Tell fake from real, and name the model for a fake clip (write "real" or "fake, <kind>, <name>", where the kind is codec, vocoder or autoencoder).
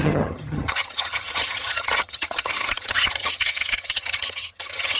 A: fake, vocoder, HiFi-GAN